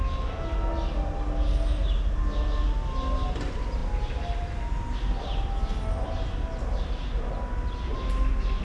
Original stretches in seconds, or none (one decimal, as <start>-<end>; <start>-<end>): 0.0-8.6